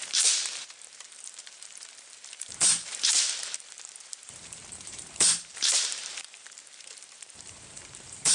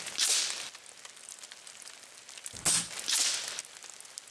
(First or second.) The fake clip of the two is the first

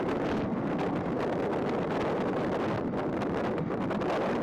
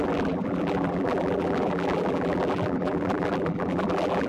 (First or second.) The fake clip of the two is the second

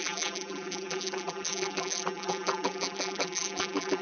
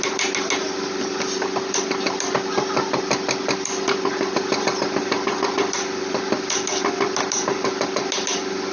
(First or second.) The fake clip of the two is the first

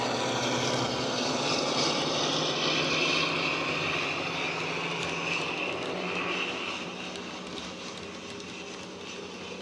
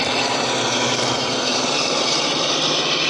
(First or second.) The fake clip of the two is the second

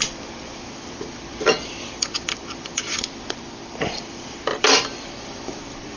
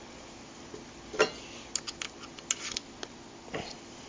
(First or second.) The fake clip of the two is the first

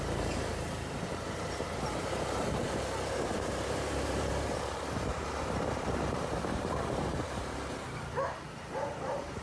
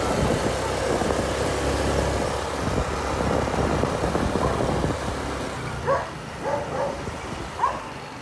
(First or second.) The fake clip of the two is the first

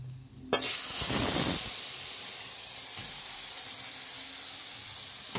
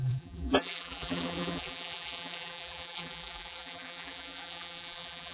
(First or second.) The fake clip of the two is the second